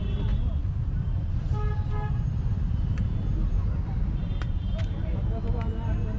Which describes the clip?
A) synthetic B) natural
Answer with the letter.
A